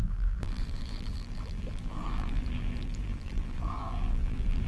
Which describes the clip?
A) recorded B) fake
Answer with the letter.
B